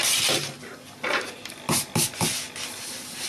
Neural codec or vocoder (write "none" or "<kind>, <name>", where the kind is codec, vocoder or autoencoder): none